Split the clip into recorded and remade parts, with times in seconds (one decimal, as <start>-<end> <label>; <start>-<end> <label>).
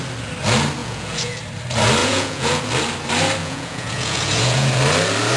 0.0-0.8 recorded; 0.8-1.4 remade; 1.4-2.0 recorded; 2.0-2.6 remade; 2.6-3.4 recorded; 3.4-4.8 remade; 4.8-5.4 recorded